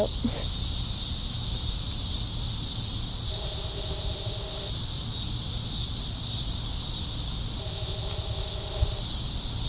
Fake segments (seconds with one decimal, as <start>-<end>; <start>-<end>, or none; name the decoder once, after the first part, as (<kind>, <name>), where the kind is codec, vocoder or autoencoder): 3.3-4.7 (codec, ZipCodec); 7.6-9.0